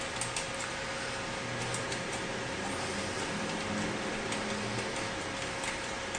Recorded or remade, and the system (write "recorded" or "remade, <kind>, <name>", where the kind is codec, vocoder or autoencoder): recorded